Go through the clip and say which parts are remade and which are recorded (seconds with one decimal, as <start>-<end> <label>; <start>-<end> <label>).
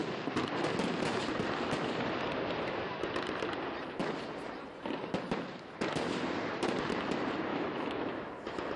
0.0-7.5 recorded; 7.5-8.3 remade; 8.3-8.8 recorded